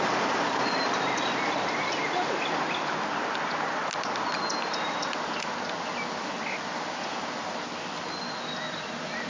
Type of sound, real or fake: real